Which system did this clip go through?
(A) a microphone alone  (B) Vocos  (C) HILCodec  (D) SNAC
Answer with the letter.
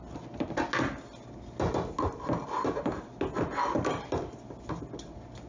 A